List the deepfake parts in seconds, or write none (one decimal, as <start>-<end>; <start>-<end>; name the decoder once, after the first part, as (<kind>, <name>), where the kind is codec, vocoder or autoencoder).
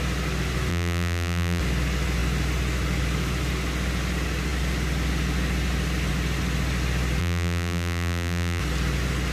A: 0.7-1.6 (vocoder, BigVGAN v2); 7.2-8.6